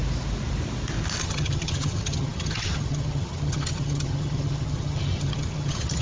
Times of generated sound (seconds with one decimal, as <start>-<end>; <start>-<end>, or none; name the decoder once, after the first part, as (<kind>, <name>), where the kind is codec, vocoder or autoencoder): 1.2-6.0 (vocoder, HiFi-GAN)